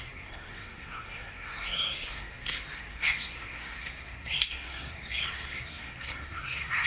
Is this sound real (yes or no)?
no